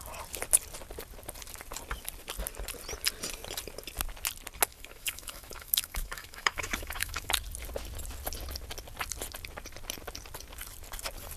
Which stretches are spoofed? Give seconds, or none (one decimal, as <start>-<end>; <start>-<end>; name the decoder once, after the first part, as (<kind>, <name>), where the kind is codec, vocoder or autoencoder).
4.7-7.3 (autoencoder, DAC-VAE)